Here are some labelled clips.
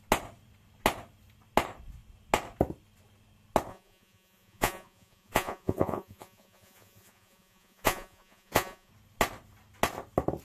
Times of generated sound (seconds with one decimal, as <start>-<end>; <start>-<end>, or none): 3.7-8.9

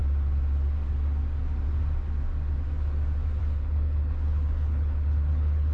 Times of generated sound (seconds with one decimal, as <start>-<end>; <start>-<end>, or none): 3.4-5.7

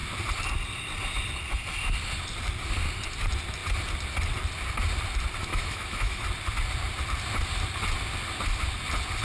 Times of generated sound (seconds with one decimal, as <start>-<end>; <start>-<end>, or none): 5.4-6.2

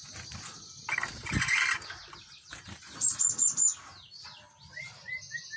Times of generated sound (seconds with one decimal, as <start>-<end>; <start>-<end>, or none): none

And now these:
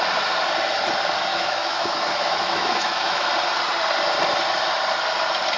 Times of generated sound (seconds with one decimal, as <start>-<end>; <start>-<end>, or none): 1.3-3.3

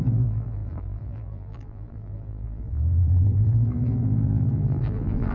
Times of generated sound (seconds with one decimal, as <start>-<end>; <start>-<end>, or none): 0.0-5.3

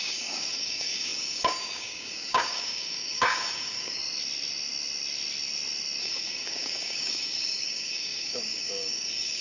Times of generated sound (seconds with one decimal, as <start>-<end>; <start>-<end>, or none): 0.0-4.0; 6.0-9.4